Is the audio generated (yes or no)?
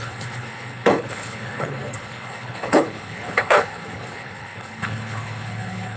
yes